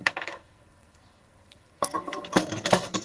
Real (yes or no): no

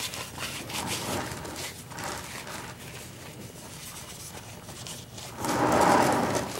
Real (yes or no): yes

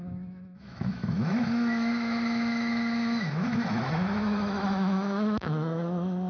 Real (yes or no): no